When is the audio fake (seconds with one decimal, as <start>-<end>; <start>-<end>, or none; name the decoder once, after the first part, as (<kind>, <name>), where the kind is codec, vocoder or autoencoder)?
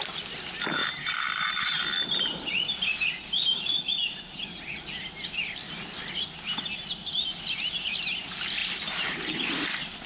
none